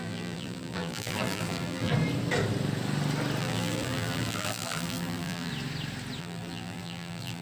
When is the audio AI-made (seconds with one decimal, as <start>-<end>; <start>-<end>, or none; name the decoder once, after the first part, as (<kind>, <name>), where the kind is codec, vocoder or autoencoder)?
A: 0.0-1.9 (vocoder, BigVGAN v2); 3.4-5.5; 6.2-7.4